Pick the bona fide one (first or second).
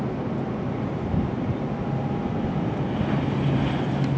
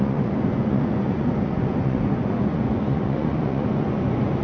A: first